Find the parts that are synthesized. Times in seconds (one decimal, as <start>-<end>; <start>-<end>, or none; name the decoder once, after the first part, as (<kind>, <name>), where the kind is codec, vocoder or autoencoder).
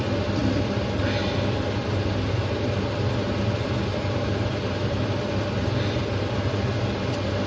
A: 1.8-6.3 (vocoder, BigVGAN v2)